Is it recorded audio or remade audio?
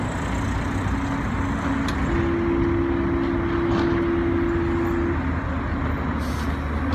recorded